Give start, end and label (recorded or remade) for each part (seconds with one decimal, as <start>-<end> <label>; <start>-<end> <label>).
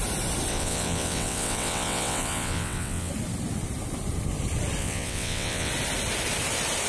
0.0-0.5 recorded; 0.5-3.1 remade; 3.1-4.8 recorded; 4.8-5.7 remade; 5.7-6.9 recorded